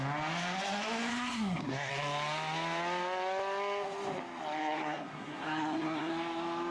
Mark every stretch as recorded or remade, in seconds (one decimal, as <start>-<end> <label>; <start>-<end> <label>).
0.0-1.1 recorded; 1.1-1.9 remade; 1.9-4.6 recorded; 4.6-6.1 remade; 6.1-6.7 recorded